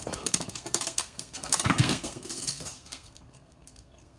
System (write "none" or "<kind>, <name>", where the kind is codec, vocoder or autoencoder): codec, SNAC